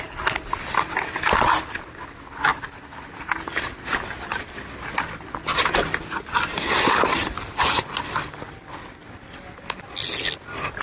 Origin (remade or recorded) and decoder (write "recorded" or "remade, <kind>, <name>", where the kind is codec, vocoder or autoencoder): recorded